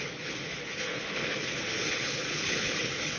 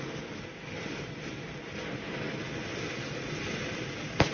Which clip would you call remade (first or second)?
first